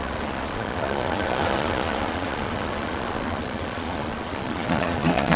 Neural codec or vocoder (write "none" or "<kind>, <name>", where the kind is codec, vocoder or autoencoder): vocoder, Vocos